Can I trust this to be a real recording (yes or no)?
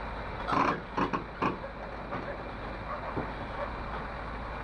yes